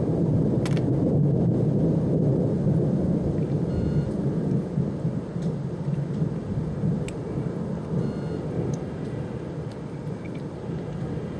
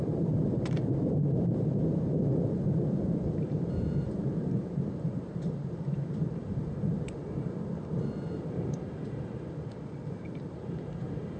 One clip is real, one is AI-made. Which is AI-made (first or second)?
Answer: second